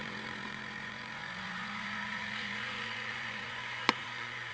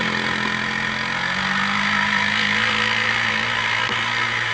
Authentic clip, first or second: second